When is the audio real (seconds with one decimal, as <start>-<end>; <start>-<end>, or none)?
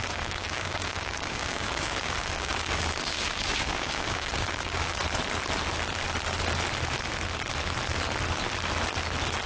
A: 5.0-9.5